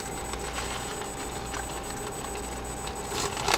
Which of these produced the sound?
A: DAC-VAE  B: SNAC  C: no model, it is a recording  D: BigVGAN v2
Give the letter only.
C